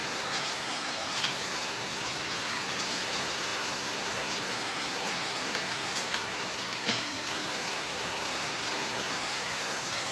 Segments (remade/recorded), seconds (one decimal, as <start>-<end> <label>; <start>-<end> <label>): 0.0-10.1 remade